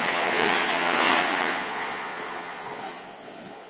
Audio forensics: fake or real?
fake